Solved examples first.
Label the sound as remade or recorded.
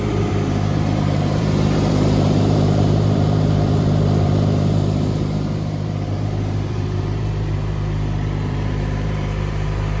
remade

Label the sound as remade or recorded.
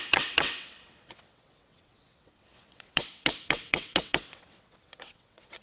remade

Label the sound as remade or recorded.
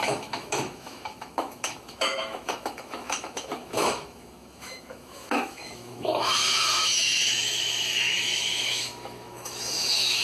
remade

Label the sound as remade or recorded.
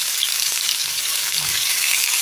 remade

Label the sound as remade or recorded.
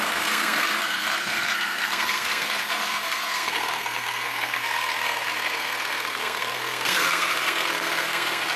remade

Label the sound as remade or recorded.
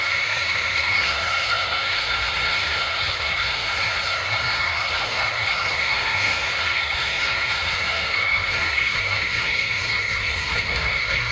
remade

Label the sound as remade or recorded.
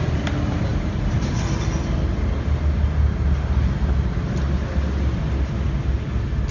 recorded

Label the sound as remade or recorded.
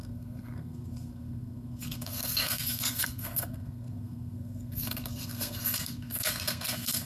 remade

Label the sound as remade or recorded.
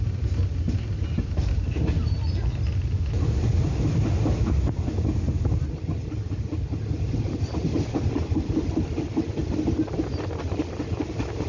recorded